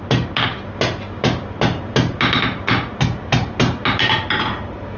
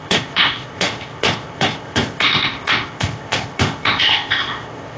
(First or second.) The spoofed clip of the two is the second